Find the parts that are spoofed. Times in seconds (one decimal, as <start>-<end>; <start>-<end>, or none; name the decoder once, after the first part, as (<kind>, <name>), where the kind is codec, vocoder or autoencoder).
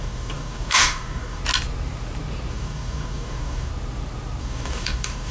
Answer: 0.0-1.4 (codec, DAC); 2.5-3.7; 4.4-5.3